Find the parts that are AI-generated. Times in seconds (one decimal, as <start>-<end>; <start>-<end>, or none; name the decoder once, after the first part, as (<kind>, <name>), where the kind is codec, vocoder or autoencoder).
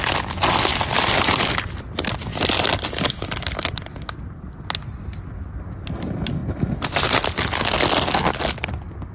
0.7-1.3 (vocoder, BigVGAN v2); 2.3-4.5